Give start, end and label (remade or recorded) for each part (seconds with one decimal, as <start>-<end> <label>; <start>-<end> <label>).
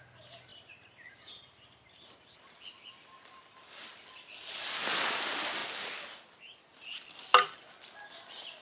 0.0-8.6 recorded